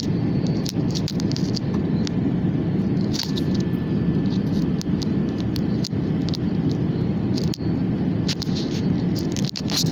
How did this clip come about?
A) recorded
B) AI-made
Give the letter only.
A